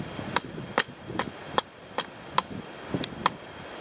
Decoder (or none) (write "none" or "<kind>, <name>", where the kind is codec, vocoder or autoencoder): none